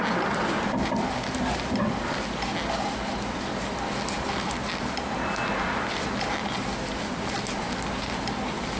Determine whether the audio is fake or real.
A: real